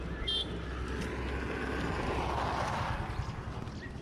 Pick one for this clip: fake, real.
real